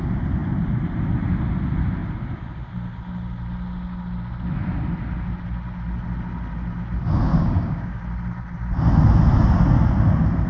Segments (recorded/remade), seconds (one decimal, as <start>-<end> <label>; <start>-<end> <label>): 0.0-7.3 recorded; 7.3-8.0 remade; 8.0-10.5 recorded

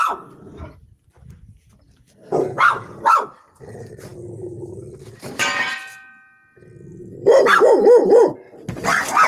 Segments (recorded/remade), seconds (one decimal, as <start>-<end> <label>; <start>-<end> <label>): 0.0-9.3 recorded

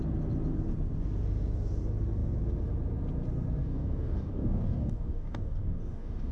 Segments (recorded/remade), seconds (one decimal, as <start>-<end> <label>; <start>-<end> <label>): 0.0-3.6 recorded; 3.6-6.3 remade

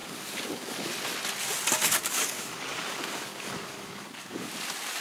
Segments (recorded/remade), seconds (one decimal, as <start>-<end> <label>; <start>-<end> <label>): 0.0-0.9 remade; 0.9-1.8 recorded; 1.8-4.5 remade; 4.5-5.0 recorded

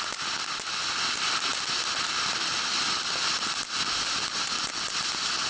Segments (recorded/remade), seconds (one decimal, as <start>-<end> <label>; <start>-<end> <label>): 0.0-5.5 recorded

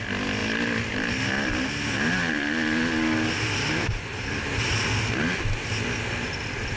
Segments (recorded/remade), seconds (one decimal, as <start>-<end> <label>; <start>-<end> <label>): 0.0-6.8 recorded